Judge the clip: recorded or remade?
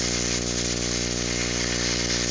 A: recorded